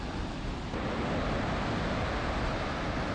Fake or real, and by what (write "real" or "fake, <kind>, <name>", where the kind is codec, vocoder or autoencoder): real